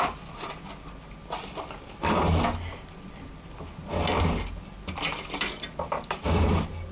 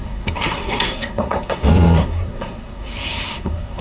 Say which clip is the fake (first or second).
second